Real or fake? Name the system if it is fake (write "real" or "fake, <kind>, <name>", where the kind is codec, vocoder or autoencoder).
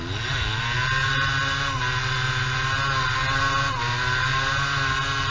real